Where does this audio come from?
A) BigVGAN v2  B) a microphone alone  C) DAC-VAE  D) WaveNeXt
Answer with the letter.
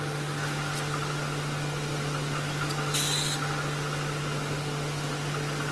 B